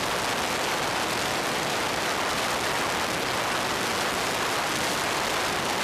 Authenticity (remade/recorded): recorded